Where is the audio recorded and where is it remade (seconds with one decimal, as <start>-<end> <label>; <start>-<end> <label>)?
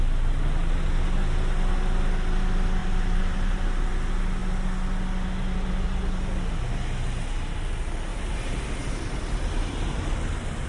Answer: 0.0-2.8 recorded; 2.8-3.9 remade; 3.9-8.1 recorded; 8.1-8.6 remade; 8.6-10.7 recorded